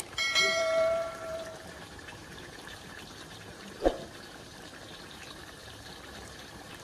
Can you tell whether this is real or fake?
fake